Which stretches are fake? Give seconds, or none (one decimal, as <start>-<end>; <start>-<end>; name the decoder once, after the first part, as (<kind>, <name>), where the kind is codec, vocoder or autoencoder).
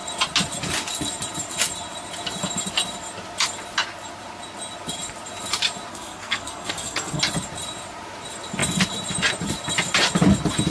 5.9-7.2 (codec, SNAC)